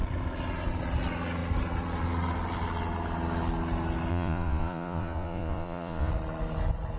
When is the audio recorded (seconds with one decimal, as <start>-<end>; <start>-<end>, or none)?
0.0-4.1; 6.1-7.0